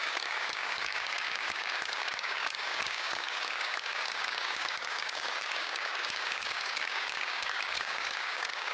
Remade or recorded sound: remade